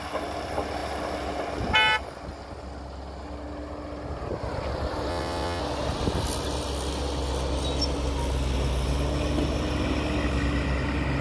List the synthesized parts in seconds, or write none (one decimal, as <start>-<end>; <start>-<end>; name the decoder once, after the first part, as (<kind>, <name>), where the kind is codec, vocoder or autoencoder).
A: 5.1-5.6 (vocoder, WaveNeXt)